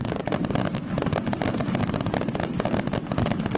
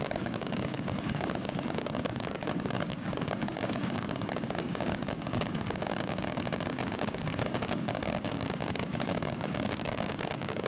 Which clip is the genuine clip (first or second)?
first